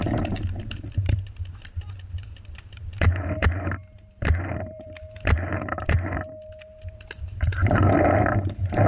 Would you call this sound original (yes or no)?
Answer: no